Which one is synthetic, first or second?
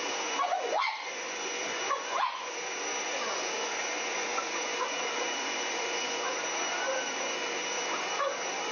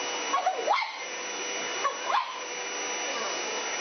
first